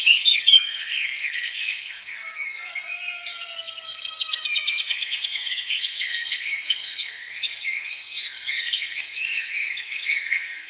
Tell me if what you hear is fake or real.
fake